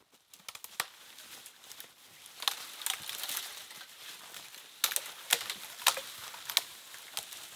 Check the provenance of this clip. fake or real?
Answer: real